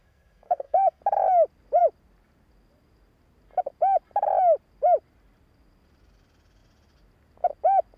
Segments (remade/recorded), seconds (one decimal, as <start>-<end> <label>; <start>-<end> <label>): 0.0-1.0 remade; 1.0-8.0 recorded